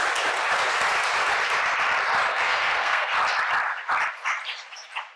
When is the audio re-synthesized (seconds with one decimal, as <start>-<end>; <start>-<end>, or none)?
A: 2.3-3.1